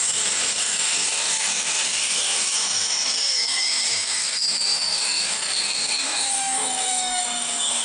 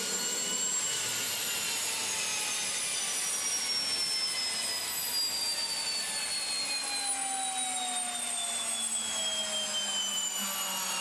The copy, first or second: first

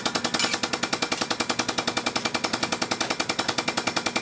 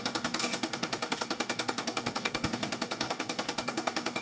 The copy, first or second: second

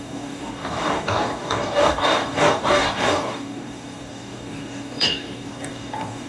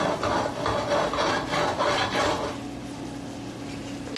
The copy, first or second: first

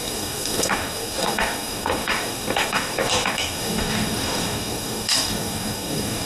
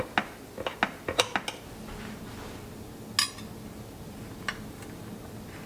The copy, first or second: first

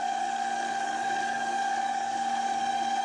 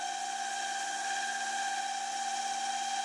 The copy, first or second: first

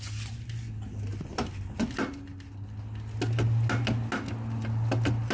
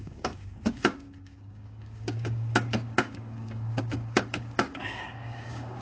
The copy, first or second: second